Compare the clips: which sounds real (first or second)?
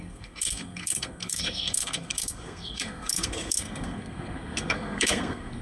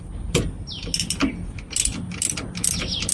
second